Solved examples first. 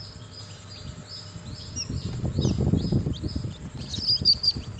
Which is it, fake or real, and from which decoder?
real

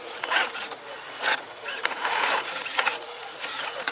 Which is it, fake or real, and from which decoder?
fake, vocoder, Vocos